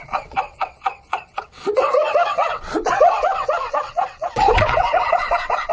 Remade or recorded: remade